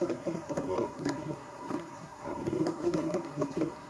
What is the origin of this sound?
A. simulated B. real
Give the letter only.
A